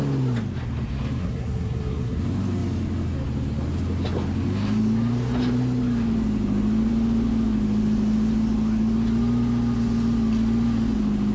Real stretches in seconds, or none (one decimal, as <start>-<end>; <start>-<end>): 0.0-1.2; 2.2-11.3